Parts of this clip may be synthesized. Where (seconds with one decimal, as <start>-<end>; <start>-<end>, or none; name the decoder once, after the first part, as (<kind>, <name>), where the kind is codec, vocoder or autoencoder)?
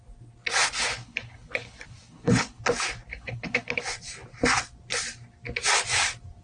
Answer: 0.6-2.6 (codec, HILCodec); 3.1-3.8